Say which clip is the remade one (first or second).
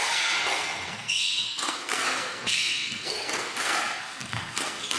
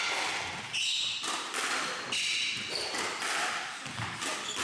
first